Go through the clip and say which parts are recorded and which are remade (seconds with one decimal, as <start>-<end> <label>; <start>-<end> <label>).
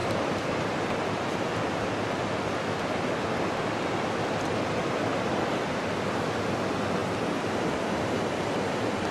0.0-0.8 remade; 0.8-9.1 recorded